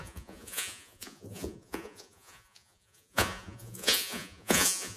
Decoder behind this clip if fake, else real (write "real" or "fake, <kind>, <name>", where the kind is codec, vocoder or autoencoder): fake, vocoder, Vocos